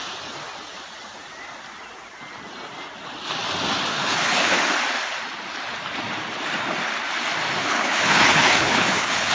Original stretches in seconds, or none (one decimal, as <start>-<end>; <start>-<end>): 0.0-3.9; 4.6-7.6

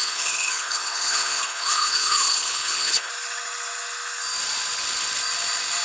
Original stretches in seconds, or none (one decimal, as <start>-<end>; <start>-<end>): 3.1-5.8

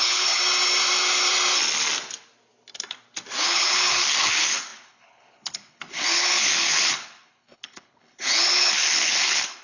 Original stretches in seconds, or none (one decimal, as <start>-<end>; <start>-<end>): 0.4-3.4